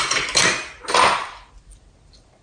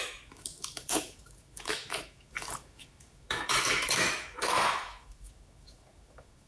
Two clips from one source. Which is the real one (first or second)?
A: first